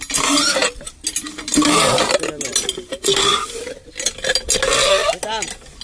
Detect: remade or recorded recorded